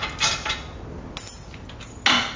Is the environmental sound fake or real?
real